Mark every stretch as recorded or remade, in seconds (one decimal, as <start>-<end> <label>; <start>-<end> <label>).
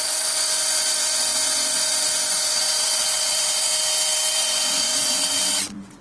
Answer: 0.0-3.7 remade; 3.7-4.3 recorded; 4.3-6.0 remade